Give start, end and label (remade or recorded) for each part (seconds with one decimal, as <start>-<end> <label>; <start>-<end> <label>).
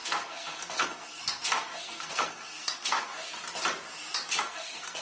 0.0-3.1 remade; 3.1-4.4 recorded; 4.4-5.0 remade